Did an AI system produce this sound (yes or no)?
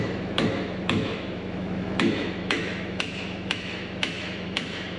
yes